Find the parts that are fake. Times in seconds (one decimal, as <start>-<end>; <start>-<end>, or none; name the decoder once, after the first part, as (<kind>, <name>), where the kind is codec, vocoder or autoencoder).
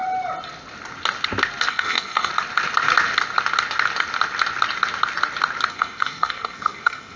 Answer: 1.7-2.3 (codec, SNAC); 5.7-7.2